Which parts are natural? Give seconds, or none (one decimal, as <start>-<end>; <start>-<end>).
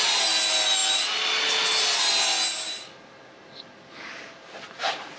0.0-5.2